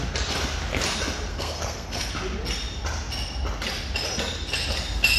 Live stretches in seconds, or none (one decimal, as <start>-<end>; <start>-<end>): 0.0-1.3; 2.1-5.2